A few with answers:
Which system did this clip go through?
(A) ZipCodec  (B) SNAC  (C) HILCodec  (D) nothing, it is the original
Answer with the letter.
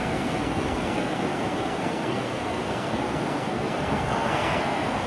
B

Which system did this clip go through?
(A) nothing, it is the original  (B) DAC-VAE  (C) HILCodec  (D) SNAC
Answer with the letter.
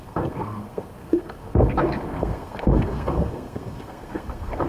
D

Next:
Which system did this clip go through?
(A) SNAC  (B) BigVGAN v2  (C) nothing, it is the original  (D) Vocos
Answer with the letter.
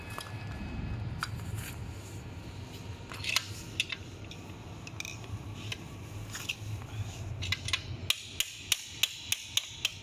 C